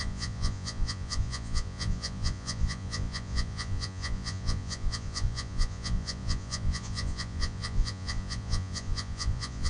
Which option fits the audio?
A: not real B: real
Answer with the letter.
A